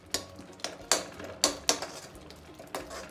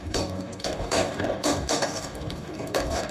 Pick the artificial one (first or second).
second